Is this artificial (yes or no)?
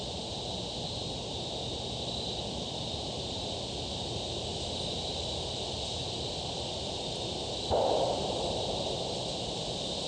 no